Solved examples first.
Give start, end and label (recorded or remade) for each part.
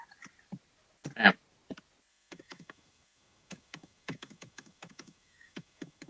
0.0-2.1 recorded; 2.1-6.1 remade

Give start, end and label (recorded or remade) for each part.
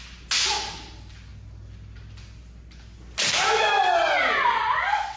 0.0-5.2 recorded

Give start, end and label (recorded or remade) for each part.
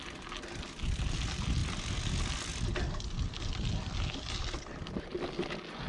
0.0-5.9 recorded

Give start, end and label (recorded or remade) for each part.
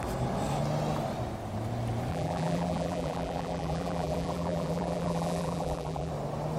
0.0-2.1 recorded; 2.1-6.1 remade; 6.1-6.6 recorded